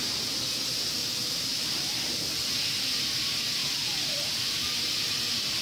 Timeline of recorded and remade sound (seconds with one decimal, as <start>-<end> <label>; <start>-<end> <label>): 0.0-1.0 recorded; 1.0-2.2 remade; 2.2-3.6 recorded; 3.6-5.6 remade